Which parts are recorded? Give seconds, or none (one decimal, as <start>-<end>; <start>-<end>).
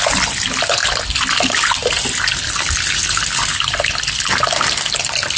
0.0-5.4